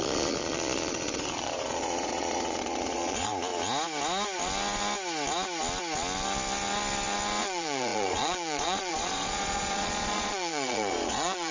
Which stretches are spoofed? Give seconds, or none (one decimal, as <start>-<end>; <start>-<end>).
0.0-3.3; 7.4-11.5